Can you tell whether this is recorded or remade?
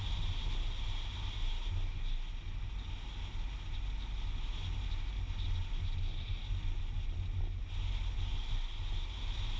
recorded